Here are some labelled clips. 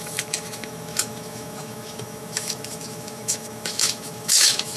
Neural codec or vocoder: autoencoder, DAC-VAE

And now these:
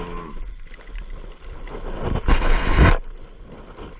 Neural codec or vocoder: none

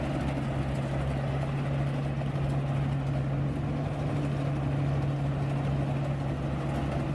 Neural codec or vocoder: none